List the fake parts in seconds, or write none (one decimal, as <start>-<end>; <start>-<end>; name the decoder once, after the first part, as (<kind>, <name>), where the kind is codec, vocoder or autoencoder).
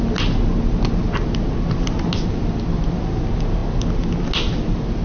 none